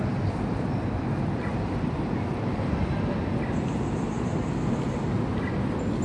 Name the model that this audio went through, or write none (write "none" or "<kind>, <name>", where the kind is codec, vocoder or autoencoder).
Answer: none